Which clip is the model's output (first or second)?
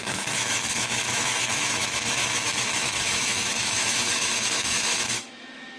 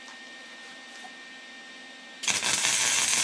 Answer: first